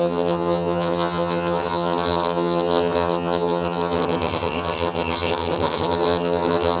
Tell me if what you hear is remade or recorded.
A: remade